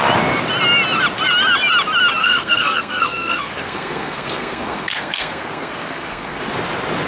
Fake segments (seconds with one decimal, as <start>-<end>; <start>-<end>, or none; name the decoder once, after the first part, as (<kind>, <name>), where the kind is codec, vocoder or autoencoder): 2.2-6.4 (codec, SNAC)